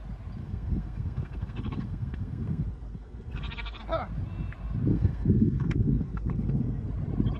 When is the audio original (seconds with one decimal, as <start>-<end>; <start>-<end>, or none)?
0.0-0.4; 3.8-4.9; 6.9-7.4